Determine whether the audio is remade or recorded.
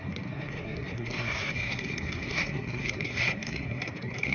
remade